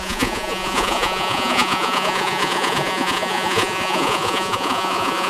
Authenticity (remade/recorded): remade